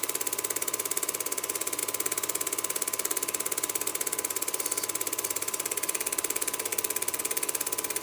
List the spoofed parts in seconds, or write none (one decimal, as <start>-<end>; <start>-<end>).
0.0-6.7; 7.2-8.0